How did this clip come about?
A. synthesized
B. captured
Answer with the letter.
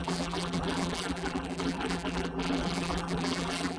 A